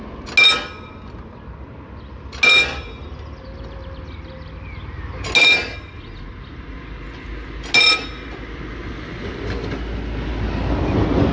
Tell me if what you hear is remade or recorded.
recorded